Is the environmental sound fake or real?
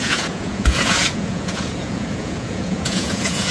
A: fake